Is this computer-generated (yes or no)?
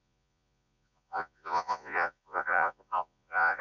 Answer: yes